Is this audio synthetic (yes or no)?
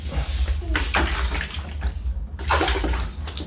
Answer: no